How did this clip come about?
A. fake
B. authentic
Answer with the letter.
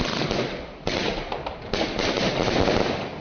B